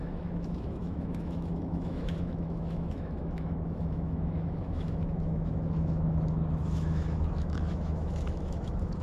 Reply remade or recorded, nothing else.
remade